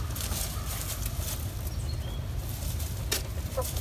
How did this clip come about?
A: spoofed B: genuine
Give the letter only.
B